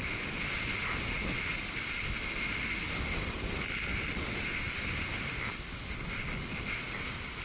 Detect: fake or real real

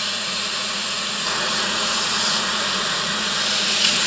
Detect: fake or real fake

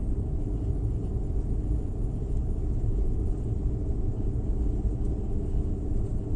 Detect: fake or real real